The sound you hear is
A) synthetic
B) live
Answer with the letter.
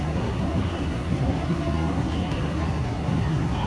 A